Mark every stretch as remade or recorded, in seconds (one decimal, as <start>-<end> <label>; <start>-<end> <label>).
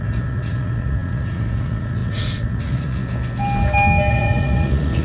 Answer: 0.0-3.0 remade; 3.0-4.1 recorded; 4.1-5.0 remade